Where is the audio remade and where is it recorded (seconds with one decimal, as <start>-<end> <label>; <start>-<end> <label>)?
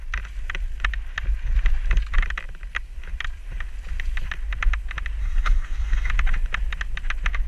0.0-5.2 recorded; 5.2-6.1 remade; 6.1-7.5 recorded